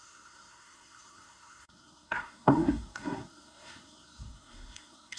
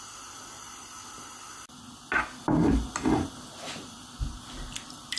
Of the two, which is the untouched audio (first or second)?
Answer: second